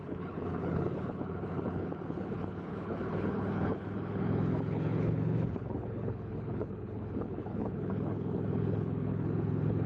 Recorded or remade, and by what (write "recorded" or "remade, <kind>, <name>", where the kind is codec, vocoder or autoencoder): remade, codec, HILCodec